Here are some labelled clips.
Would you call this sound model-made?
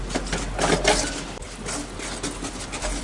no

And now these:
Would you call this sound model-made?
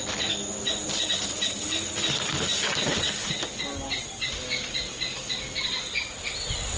no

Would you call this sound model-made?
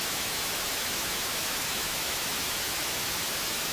yes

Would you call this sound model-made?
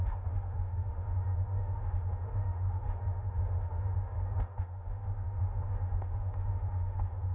yes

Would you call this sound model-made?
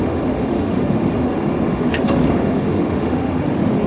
yes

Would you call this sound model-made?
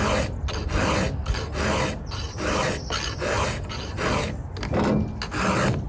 no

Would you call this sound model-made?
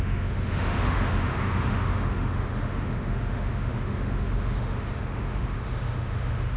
yes